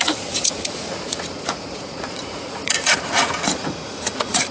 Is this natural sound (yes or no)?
no